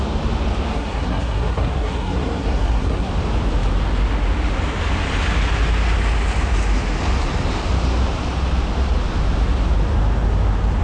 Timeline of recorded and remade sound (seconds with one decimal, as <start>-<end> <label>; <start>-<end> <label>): 0.0-0.7 recorded; 0.7-3.1 remade; 3.1-10.8 recorded